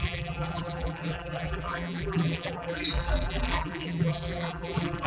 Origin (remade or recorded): remade